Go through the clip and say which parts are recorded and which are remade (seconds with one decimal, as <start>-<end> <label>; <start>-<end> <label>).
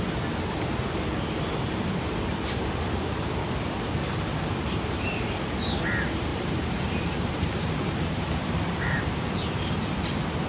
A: 0.0-6.3 recorded; 6.3-9.0 remade; 9.0-10.5 recorded